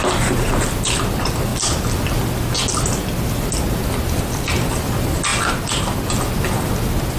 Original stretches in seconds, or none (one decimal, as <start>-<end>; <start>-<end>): 0.0-7.2